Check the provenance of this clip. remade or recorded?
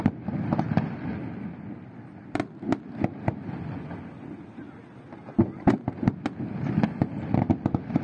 recorded